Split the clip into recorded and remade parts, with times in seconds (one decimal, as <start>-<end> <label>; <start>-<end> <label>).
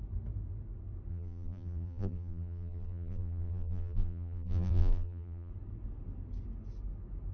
0.0-1.1 recorded; 1.1-5.5 remade; 5.5-7.3 recorded